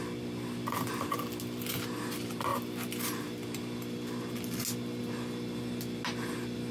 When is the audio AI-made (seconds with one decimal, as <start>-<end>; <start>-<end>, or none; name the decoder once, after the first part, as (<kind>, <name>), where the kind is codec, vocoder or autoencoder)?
none